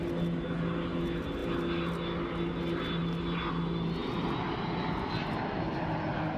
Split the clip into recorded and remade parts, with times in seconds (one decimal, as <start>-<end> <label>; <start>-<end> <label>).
0.0-4.0 recorded; 4.0-5.6 remade; 5.6-6.4 recorded